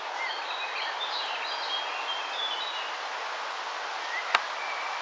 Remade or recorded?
recorded